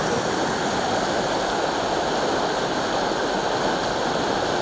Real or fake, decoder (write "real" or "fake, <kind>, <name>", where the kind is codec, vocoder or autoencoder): real